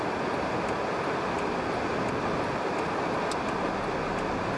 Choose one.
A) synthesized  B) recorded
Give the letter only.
B